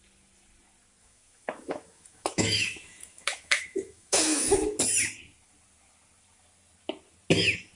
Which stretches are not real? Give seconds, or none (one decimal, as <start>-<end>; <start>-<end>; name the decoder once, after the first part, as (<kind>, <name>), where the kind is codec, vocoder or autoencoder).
1.0-4.8 (autoencoder, DAC-VAE)

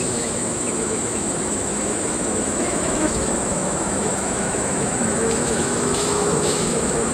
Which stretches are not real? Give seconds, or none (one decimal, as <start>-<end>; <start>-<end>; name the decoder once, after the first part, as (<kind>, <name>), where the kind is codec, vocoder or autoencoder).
0.0-7.1 (autoencoder, DAC-VAE)

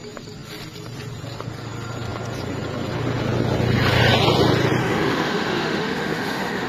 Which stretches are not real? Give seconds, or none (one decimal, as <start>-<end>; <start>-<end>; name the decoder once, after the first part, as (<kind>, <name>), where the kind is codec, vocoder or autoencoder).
4.8-6.7 (autoencoder, DAC-VAE)

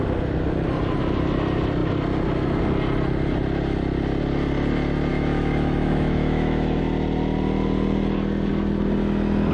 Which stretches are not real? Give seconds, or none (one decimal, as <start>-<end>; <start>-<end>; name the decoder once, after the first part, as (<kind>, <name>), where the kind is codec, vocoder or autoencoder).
5.1-6.8 (autoencoder, DAC-VAE)

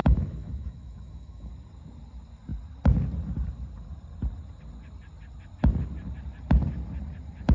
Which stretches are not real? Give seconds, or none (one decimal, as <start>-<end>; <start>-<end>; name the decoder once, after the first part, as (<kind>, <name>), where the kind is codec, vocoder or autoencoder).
0.0-1.5 (autoencoder, DAC-VAE)

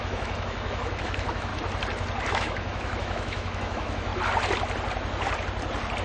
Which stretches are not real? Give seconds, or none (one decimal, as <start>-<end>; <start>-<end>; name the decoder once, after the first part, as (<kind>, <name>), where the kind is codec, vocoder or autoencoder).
0.0-1.5 (autoencoder, DAC-VAE); 2.3-4.1

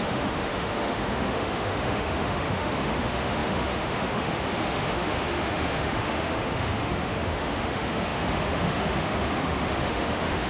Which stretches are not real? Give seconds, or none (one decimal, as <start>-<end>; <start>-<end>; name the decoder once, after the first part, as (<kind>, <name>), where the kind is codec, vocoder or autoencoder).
0.0-10.5 (autoencoder, DAC-VAE)

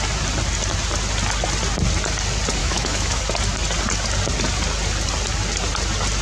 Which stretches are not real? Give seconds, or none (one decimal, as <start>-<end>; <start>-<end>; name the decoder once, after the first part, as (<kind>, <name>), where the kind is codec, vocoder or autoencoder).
2.6-3.2 (autoencoder, DAC-VAE)